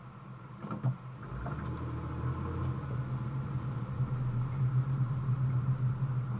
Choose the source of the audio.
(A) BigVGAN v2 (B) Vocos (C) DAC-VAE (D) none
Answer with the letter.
D